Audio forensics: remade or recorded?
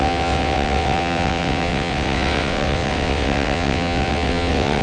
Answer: remade